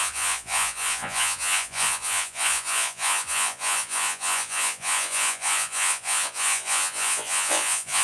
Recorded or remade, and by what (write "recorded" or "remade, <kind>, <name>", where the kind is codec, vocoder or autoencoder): remade, vocoder, Vocos